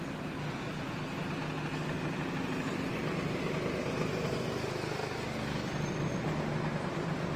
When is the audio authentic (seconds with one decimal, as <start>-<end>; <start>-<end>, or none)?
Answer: 0.0-7.4